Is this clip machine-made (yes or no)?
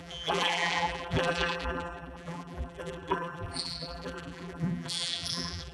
yes